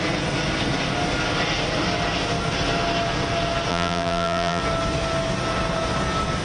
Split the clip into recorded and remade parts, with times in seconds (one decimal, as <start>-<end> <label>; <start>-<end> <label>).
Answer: 0.0-3.7 recorded; 3.7-4.6 remade; 4.6-6.4 recorded